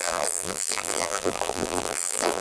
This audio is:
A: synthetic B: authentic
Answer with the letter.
A